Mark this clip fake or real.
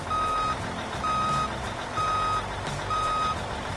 real